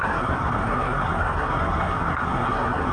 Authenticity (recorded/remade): remade